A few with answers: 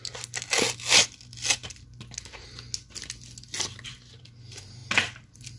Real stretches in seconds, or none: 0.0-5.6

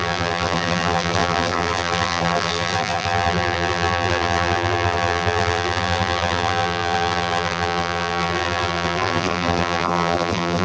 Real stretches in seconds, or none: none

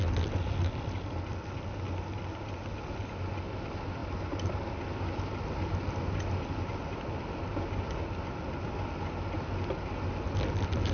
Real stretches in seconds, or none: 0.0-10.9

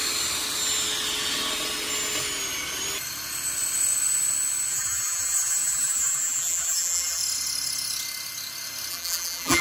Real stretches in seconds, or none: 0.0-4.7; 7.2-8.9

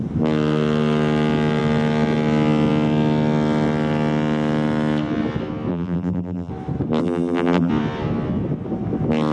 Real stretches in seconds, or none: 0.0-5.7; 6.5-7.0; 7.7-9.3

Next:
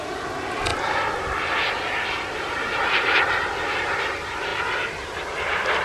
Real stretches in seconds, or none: 0.7-3.6